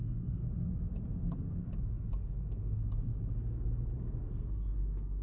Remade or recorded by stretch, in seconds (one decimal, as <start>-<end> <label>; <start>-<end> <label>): 0.0-0.4 remade; 0.4-1.1 recorded; 1.1-1.6 remade; 1.6-2.5 recorded; 2.5-3.1 remade; 3.1-4.3 recorded; 4.3-5.2 remade